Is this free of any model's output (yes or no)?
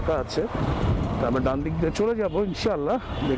yes